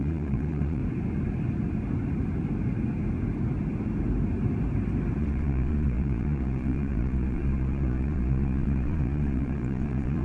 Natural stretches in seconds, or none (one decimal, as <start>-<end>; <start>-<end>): 0.8-5.2